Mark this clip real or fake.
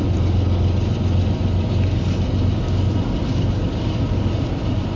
real